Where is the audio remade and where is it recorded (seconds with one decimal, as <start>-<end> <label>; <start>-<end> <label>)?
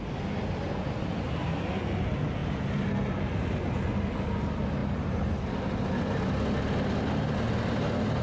0.0-2.4 recorded; 2.4-2.9 remade; 2.9-4.8 recorded; 4.8-5.4 remade; 5.4-8.2 recorded